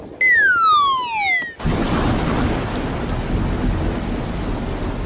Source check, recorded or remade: recorded